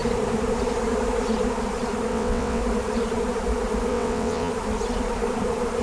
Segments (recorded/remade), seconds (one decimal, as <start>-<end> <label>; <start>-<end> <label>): 0.0-2.1 recorded; 2.1-2.6 remade; 2.6-3.9 recorded; 3.9-4.5 remade; 4.5-5.8 recorded